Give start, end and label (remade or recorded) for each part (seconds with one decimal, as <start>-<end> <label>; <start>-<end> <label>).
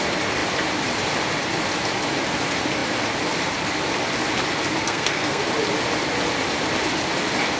0.0-4.8 recorded; 4.8-5.4 remade; 5.4-7.6 recorded